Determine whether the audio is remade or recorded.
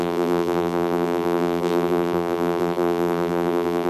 remade